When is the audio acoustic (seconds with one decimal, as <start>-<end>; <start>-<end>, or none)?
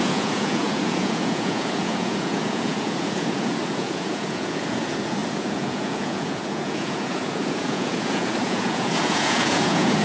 none